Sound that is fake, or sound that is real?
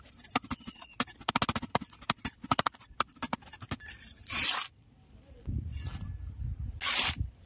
real